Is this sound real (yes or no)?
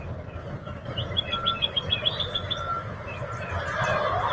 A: yes